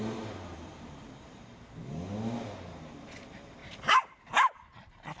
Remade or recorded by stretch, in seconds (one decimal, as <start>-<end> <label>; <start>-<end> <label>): 0.0-1.8 remade; 1.8-3.0 recorded; 3.0-5.2 remade